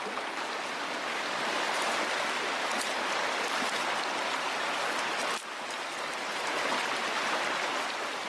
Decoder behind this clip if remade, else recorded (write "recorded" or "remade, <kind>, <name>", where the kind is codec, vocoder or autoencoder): recorded